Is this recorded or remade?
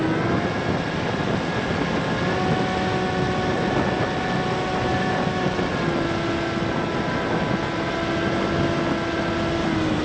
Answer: recorded